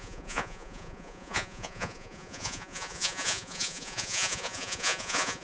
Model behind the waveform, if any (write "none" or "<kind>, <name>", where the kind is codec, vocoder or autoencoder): vocoder, Vocos